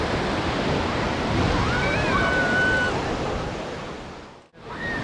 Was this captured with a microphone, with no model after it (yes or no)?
yes